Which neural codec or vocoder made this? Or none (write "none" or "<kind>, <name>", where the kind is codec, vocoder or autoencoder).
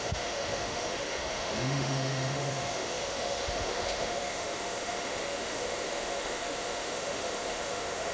autoencoder, DAC-VAE